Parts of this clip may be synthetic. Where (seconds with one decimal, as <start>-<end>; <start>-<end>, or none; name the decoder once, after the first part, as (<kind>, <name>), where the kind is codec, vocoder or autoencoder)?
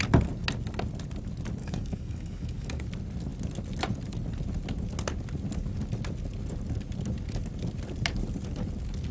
1.6-2.8 (codec, DAC)